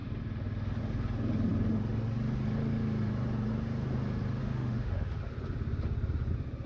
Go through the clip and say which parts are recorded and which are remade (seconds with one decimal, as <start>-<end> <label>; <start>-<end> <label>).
0.0-4.4 recorded; 4.4-5.2 remade; 5.2-6.7 recorded